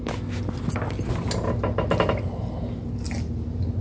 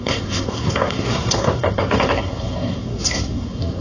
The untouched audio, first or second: first